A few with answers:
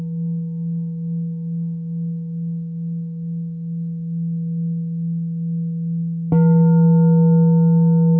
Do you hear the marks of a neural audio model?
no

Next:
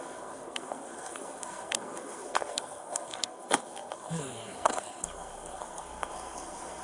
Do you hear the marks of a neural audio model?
yes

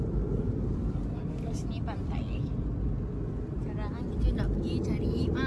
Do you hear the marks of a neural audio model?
no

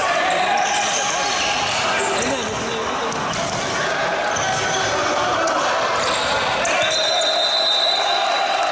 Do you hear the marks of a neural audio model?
no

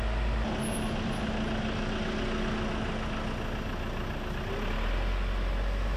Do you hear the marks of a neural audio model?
no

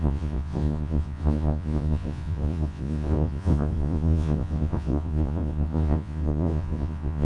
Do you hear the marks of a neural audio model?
yes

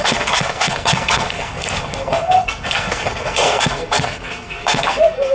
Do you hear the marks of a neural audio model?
yes